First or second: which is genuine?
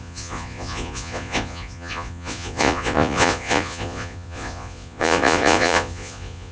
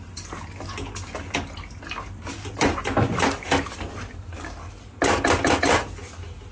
second